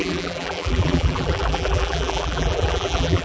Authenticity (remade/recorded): remade